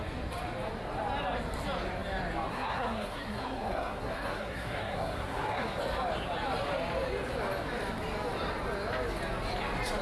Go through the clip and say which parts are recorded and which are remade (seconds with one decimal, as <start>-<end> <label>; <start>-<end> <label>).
0.0-2.5 recorded; 2.5-5.8 remade; 5.8-10.0 recorded